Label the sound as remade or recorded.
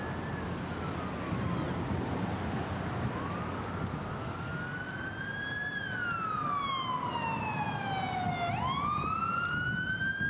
recorded